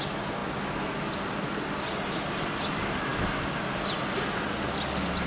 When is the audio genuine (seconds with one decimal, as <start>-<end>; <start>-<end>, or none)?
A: 0.0-5.3